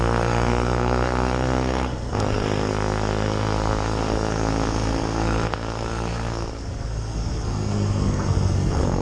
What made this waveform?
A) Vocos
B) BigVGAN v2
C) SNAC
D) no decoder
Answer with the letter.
C